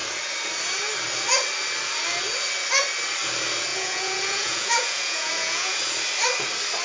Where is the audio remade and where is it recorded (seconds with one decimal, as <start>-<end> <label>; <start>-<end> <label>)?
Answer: 0.0-3.7 recorded; 3.7-5.8 remade; 5.8-6.8 recorded